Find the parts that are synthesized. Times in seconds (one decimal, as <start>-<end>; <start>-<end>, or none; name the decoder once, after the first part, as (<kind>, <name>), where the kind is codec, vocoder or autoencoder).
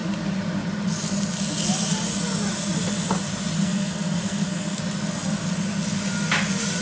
3.6-4.8 (codec, SNAC)